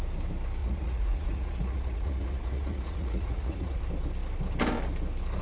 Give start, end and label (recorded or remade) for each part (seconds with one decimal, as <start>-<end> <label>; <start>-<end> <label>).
0.0-0.6 recorded; 0.6-3.8 remade; 3.8-5.4 recorded